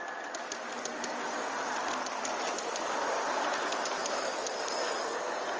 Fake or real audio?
real